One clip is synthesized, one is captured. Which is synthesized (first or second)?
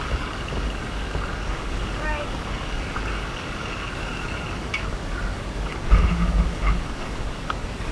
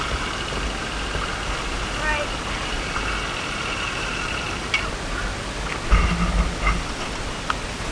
first